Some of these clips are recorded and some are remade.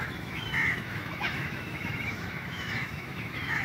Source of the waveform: remade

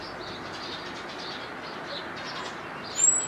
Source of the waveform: recorded